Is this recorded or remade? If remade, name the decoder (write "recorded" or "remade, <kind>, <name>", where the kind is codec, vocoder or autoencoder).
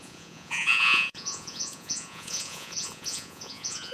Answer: remade, vocoder, Vocos